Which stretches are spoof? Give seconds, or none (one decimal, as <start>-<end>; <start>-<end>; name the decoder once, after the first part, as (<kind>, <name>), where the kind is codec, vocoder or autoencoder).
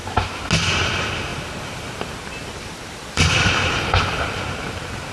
1.3-4.4 (vocoder, BigVGAN v2)